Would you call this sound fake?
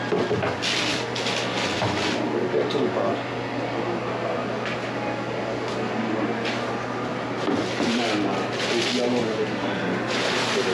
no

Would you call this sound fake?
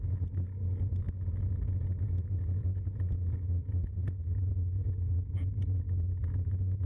no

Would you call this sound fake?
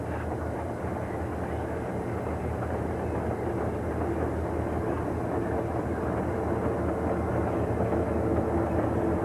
no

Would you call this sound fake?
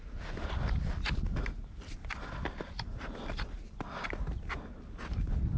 no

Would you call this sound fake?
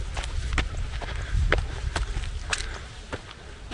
no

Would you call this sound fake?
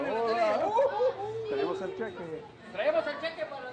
no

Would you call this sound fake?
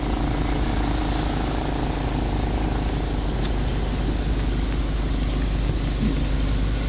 no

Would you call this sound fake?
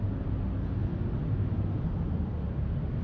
no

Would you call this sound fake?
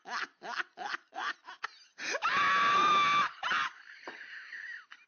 no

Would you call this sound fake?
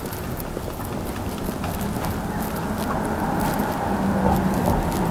no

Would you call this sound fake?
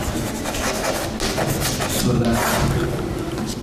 no